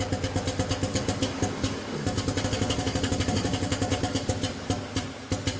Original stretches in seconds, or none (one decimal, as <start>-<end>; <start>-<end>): 0.0-0.9; 4.3-5.6